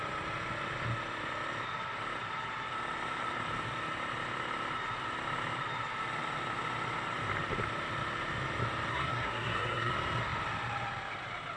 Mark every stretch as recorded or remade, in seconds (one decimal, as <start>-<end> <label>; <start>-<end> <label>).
0.0-8.9 recorded; 8.9-9.9 remade; 9.9-11.6 recorded